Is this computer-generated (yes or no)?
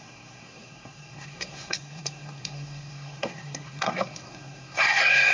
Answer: yes